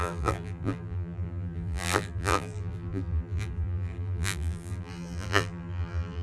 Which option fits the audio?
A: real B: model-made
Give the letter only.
B